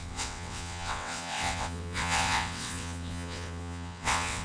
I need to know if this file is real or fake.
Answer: fake